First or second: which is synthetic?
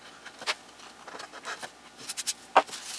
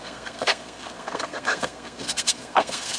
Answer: second